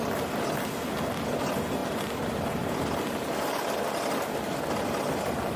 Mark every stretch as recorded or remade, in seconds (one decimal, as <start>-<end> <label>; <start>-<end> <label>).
0.0-5.6 recorded